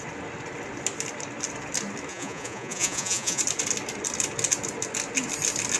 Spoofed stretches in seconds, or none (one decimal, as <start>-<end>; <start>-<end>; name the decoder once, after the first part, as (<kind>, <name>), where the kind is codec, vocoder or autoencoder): 2.1-3.4 (vocoder, Vocos)

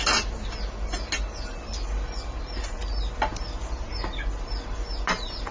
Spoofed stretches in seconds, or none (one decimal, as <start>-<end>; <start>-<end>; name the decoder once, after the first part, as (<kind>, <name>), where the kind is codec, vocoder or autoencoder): none

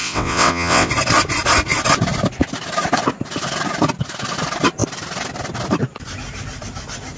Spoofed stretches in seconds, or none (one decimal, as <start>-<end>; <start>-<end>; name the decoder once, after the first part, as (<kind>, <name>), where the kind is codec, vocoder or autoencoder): 0.0-0.9 (vocoder, WaveNeXt)